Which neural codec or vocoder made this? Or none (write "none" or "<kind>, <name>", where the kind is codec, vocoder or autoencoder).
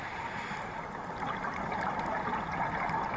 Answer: none